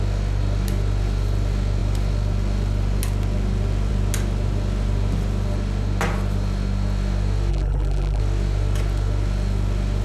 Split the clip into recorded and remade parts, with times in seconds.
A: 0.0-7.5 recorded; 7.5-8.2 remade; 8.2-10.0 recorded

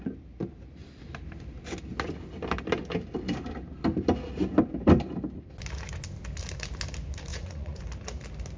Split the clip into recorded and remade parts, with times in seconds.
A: 0.0-7.3 recorded; 7.3-7.8 remade; 7.8-8.6 recorded

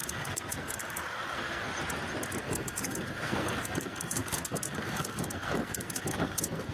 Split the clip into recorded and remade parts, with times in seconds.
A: 0.0-1.7 remade; 1.7-2.4 recorded; 2.4-6.7 remade

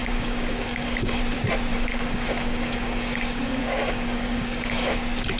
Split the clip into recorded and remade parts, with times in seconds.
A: 0.0-1.2 remade; 1.2-1.7 recorded; 1.7-4.9 remade; 4.9-5.4 recorded

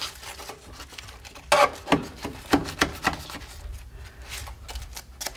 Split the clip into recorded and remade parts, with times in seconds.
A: 0.0-5.4 recorded

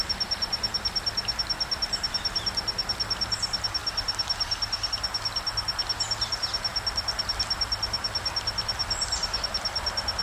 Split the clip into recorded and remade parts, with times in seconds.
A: 0.0-10.2 recorded

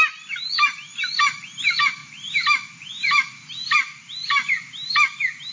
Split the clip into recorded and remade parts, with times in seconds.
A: 0.0-2.0 recorded; 2.0-5.5 remade

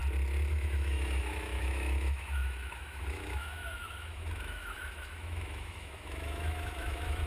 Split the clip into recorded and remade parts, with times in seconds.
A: 0.0-0.5 recorded; 0.5-7.3 remade